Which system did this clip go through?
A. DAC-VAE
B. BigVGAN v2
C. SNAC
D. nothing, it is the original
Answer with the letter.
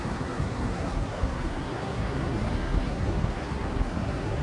C